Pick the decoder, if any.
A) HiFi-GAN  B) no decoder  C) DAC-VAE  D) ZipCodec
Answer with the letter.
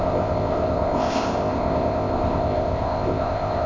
D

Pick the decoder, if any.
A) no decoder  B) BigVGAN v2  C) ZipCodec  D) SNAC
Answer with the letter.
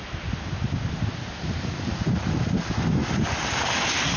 A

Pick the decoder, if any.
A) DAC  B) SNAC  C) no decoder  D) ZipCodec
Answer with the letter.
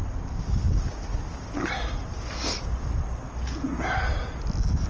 C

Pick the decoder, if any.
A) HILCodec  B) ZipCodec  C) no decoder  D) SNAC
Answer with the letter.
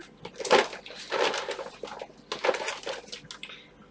C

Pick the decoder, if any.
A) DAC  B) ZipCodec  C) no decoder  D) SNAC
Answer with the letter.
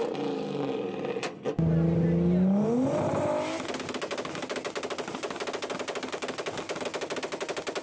C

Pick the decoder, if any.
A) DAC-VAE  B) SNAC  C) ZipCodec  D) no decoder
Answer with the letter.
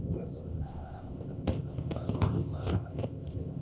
C